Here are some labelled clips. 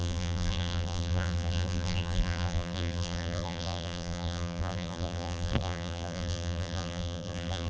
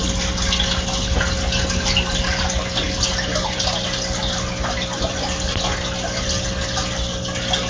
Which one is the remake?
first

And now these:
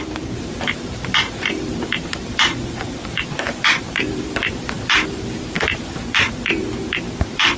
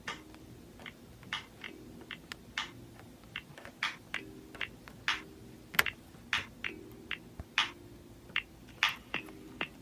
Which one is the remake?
first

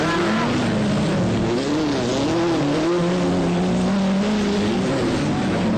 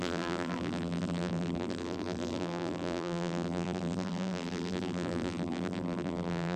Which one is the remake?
second